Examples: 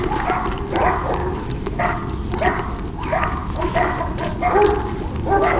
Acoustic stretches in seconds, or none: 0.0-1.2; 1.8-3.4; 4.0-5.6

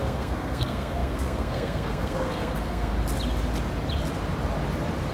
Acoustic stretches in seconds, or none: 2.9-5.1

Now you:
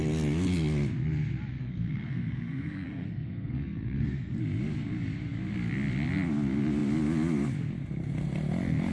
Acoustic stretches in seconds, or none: 0.0-1.6; 4.4-8.9